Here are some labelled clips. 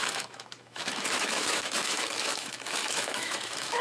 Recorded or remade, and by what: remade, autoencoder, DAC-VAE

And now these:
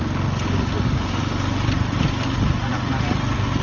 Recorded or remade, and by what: recorded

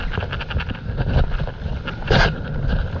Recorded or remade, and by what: recorded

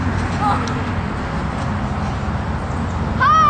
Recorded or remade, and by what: recorded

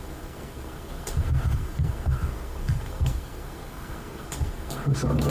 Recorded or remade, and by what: remade, codec, SNAC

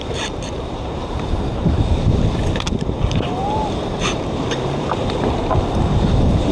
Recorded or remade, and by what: remade, vocoder, BigVGAN v2